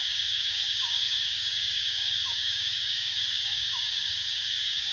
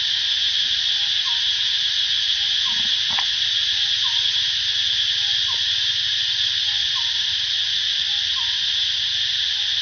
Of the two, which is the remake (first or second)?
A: first